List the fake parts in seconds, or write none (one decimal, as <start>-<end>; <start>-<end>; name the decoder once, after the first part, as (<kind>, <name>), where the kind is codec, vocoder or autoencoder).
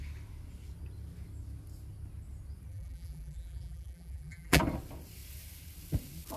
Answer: 2.7-4.6 (vocoder, BigVGAN v2)